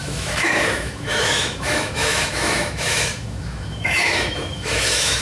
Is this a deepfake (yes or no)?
yes